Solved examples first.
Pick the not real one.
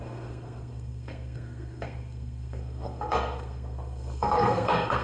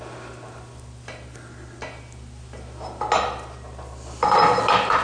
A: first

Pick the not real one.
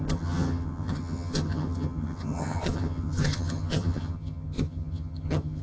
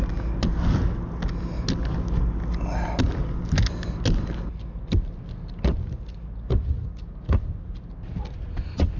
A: first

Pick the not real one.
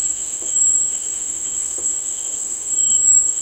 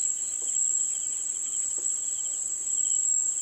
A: first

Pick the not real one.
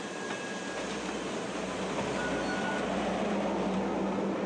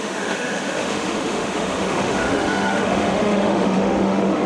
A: second